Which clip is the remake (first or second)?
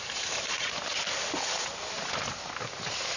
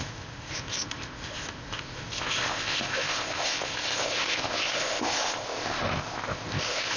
second